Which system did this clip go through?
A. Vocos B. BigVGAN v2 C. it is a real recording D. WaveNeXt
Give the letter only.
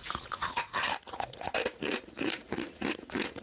A